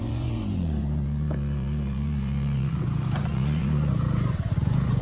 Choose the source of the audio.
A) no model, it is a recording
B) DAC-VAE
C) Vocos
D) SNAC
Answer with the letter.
C